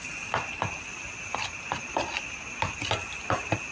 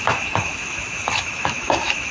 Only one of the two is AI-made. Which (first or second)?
second